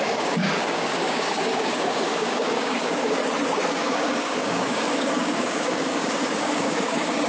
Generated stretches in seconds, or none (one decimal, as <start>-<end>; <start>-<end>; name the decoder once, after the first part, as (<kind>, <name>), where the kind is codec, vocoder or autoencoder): 0.0-3.2 (codec, DAC); 3.7-7.3